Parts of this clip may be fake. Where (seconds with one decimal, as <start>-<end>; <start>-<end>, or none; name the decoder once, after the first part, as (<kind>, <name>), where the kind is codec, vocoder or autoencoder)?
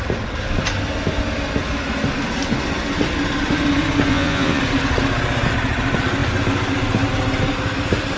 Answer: 4.1-4.6 (vocoder, Vocos)